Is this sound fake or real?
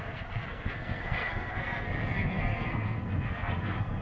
fake